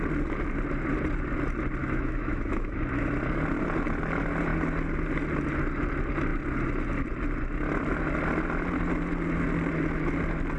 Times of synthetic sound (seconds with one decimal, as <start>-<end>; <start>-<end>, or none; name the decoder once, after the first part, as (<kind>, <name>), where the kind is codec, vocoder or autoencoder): 1.8-3.1 (autoencoder, DAC-VAE)